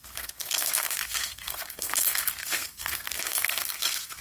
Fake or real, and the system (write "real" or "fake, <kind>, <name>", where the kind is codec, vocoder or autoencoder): fake, codec, SNAC